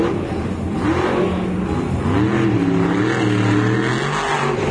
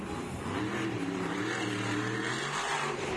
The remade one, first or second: second